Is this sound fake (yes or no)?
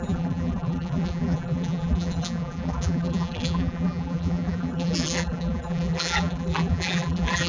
yes